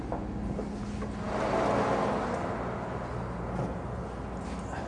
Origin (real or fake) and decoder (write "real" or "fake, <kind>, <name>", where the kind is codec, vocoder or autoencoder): real